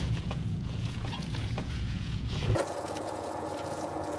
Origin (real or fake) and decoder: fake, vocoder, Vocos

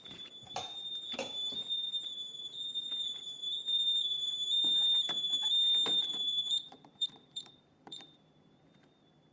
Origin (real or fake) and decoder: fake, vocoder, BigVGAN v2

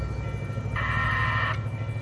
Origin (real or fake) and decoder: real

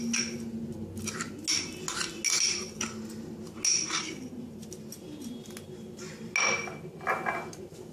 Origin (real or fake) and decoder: real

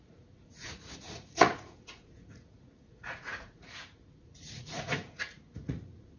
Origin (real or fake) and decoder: fake, vocoder, Vocos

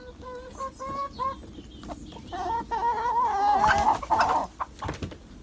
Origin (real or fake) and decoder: real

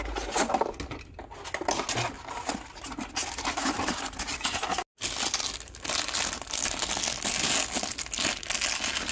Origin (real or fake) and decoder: real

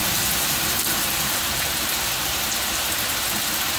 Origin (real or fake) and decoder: real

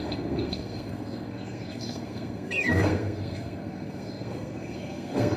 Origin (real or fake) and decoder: fake, codec, SNAC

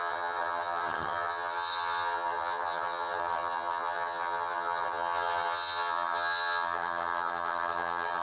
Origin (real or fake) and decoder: fake, vocoder, HiFi-GAN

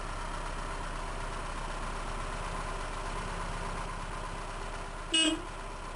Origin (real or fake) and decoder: real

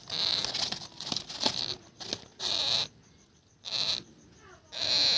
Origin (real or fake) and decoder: real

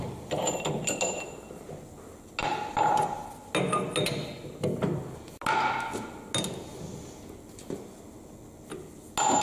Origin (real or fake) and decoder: real